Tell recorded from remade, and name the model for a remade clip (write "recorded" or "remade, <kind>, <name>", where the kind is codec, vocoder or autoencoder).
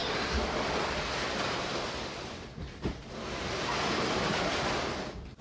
remade, vocoder, BigVGAN v2